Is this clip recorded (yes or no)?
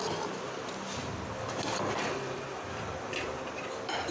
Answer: yes